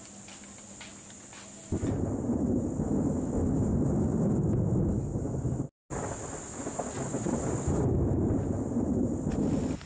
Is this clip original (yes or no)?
yes